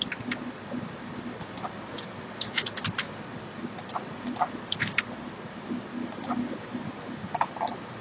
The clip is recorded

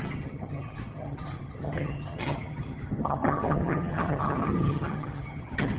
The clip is remade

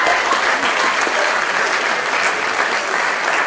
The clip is recorded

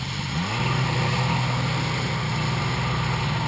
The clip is recorded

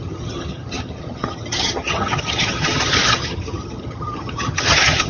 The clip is remade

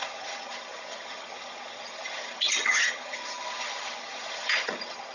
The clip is remade